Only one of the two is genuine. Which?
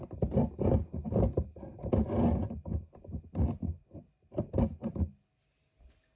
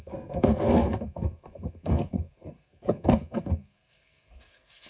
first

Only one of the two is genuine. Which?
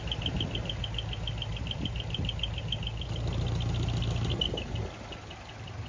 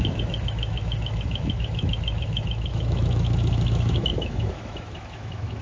first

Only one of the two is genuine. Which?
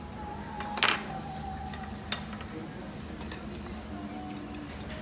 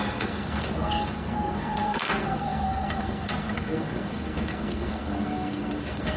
first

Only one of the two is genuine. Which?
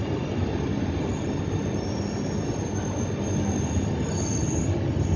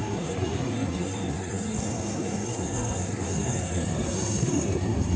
first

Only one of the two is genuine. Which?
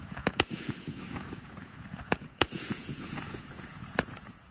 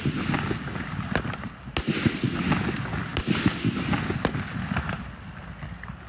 second